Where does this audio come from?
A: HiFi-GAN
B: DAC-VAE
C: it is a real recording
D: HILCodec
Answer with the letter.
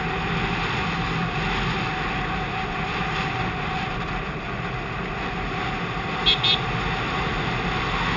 C